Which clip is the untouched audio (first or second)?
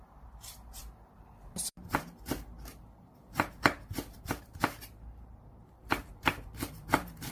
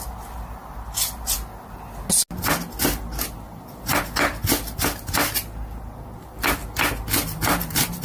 second